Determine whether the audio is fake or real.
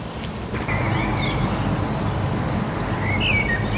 real